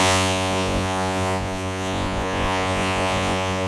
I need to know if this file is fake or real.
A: fake